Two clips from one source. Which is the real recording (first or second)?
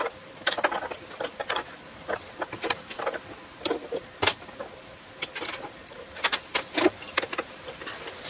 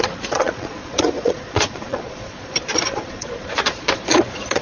first